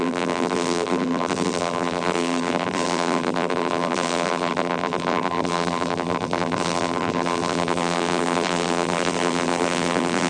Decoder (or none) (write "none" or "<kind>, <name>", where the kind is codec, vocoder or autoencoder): vocoder, BigVGAN v2